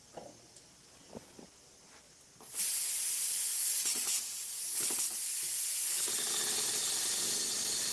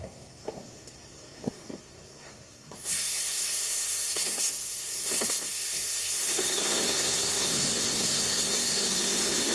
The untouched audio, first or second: first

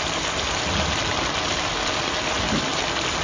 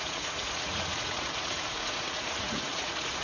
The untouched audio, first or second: first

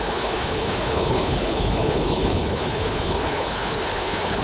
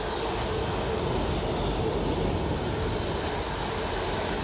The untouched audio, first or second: second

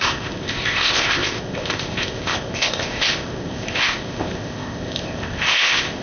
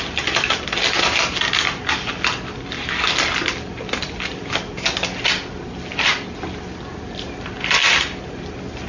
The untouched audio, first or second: second